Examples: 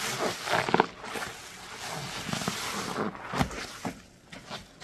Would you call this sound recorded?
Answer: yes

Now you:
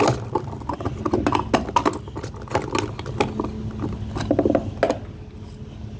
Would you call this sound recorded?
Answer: yes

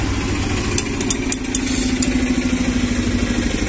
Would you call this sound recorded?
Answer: yes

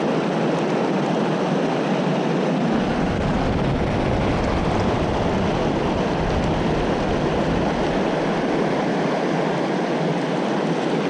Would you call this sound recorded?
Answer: yes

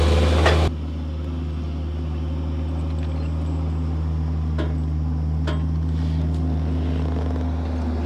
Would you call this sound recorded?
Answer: yes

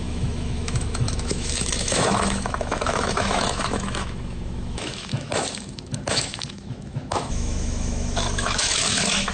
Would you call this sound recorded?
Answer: no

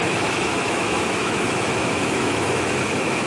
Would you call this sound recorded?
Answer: no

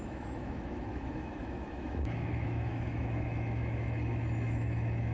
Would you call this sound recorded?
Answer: no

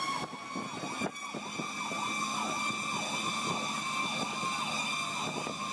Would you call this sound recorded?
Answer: yes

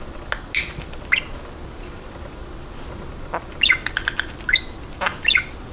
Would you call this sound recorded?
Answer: yes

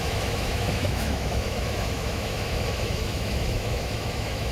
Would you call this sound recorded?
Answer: no